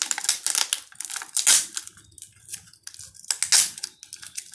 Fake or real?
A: real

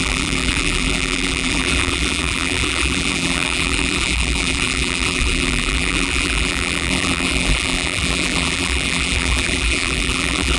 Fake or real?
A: fake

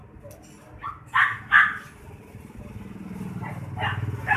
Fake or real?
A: real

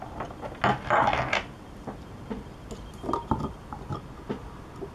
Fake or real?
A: real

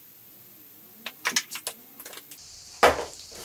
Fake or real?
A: real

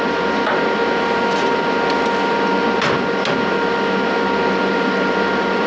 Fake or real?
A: real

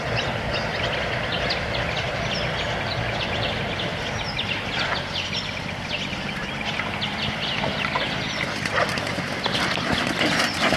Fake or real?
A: fake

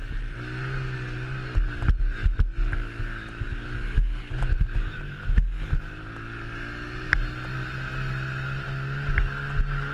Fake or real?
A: real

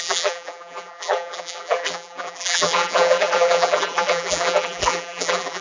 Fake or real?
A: fake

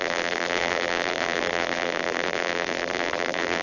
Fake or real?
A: fake